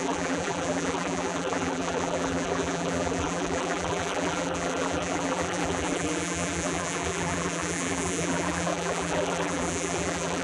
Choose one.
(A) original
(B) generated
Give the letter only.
B